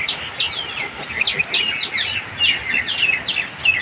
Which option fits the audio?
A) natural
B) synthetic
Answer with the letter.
A